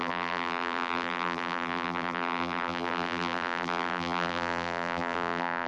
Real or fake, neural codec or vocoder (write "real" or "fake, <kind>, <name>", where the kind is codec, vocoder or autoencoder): fake, vocoder, BigVGAN v2